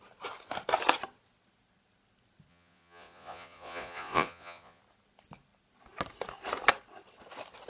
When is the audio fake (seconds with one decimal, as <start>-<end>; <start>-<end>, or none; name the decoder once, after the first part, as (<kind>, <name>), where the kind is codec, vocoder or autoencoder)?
2.5-4.8 (vocoder, Vocos)